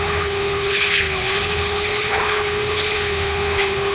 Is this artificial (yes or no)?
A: yes